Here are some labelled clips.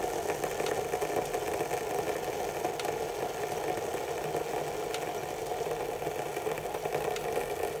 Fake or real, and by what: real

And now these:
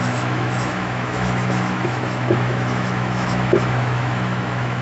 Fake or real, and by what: fake, autoencoder, DAC-VAE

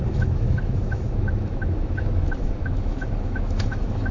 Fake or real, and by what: fake, autoencoder, DAC-VAE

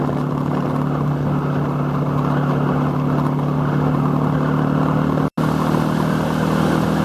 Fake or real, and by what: real